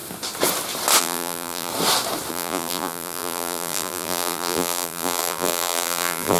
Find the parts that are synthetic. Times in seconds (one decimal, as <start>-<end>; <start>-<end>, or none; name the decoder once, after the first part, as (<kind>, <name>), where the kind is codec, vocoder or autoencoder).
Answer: 1.0-1.7 (vocoder, BigVGAN v2); 2.3-6.4